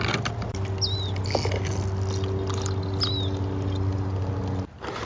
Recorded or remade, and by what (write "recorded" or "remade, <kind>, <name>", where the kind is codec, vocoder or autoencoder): recorded